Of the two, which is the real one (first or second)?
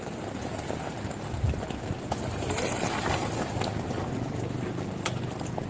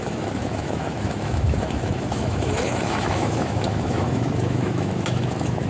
first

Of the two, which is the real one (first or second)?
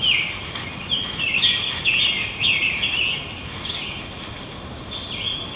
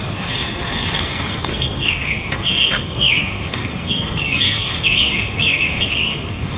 first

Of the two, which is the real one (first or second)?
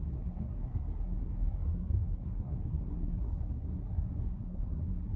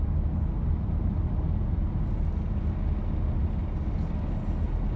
second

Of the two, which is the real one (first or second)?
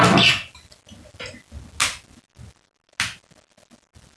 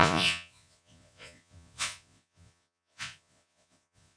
first